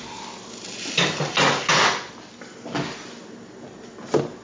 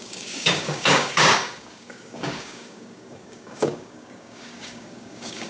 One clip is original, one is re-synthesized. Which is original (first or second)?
first